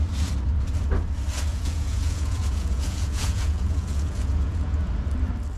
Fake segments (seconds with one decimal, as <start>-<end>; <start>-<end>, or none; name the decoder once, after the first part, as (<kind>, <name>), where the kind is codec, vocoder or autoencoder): 1.5-4.9 (vocoder, Vocos)